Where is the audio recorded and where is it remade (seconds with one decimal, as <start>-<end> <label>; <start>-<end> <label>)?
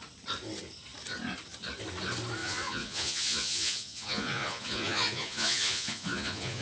0.0-2.4 recorded; 2.4-6.6 remade